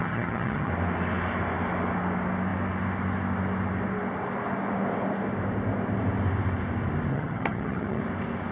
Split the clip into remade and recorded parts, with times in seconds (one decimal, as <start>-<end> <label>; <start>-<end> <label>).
0.0-0.7 remade; 0.7-7.1 recorded; 7.1-8.0 remade; 8.0-8.5 recorded